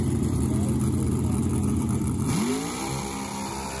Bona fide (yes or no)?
yes